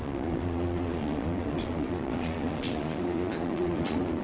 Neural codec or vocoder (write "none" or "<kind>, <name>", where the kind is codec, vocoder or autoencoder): vocoder, Vocos